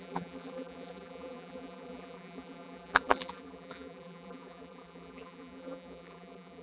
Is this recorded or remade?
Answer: remade